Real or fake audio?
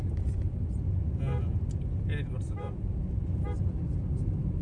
real